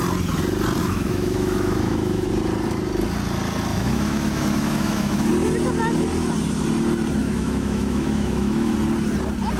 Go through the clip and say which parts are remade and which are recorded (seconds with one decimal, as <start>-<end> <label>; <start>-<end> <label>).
0.0-0.8 recorded; 0.8-2.3 remade; 2.3-3.7 recorded; 3.7-5.3 remade; 5.3-7.2 recorded; 7.2-8.7 remade; 8.7-9.6 recorded